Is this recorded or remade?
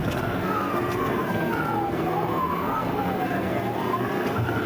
remade